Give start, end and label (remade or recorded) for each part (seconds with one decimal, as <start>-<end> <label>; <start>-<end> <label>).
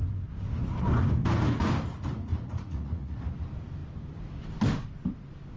0.0-2.3 recorded; 2.3-3.3 remade; 3.3-5.6 recorded